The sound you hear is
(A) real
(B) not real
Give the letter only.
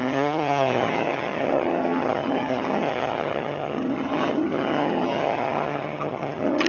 B